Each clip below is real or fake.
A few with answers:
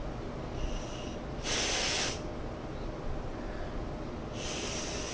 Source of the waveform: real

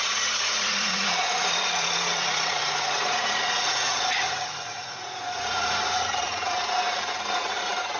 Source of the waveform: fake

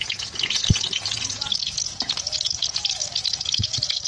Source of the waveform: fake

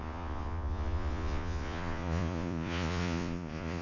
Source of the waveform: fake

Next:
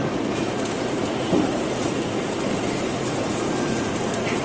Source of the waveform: fake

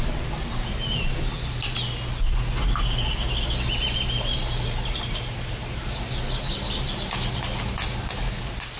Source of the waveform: real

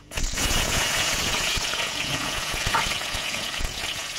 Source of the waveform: fake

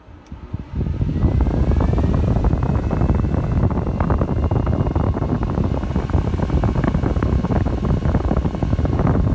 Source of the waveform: real